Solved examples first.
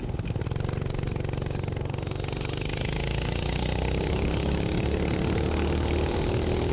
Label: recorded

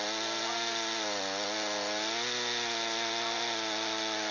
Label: recorded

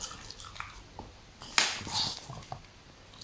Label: recorded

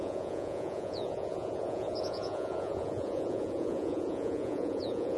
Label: remade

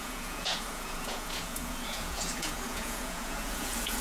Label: remade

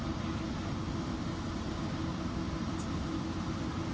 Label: recorded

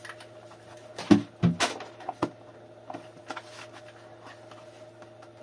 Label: recorded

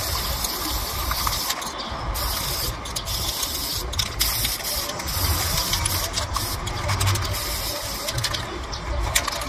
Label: recorded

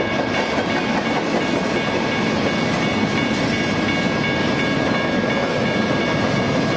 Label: recorded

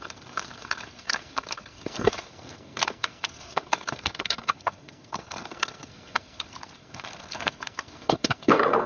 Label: remade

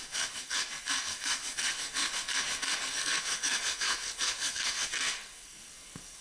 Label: remade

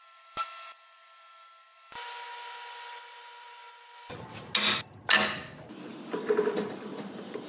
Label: recorded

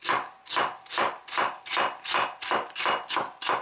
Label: recorded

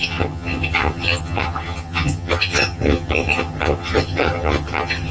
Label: remade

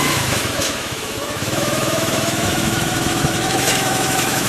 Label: remade